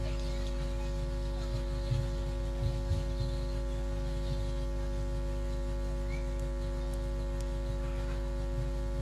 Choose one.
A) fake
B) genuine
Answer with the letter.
B